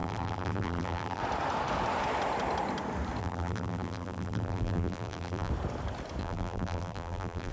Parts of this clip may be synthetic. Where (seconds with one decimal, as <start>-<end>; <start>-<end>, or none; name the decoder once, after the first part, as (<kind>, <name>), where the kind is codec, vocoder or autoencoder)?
0.0-1.2 (vocoder, BigVGAN v2); 3.2-5.5; 6.2-7.5